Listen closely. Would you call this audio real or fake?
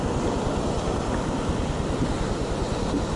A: real